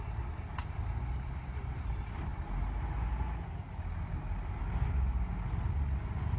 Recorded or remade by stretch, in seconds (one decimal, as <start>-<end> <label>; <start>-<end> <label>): 0.0-6.4 recorded